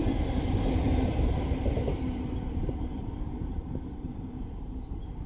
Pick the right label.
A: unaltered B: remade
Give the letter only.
B